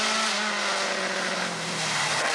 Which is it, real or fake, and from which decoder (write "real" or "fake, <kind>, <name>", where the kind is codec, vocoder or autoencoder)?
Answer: real